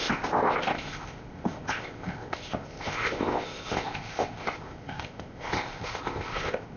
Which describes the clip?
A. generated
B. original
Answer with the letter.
A